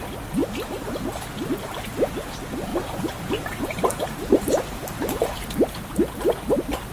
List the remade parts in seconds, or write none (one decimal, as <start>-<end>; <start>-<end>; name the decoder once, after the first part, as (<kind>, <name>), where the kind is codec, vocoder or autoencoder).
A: 2.7-6.0 (vocoder, BigVGAN v2)